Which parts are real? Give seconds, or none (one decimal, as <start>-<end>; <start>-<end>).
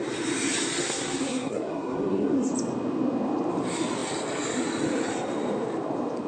0.0-0.8; 2.5-6.3